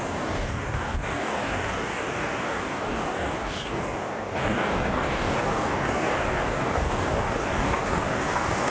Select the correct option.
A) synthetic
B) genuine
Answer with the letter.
A